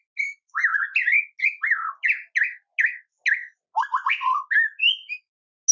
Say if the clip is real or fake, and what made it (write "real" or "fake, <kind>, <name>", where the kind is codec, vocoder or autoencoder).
real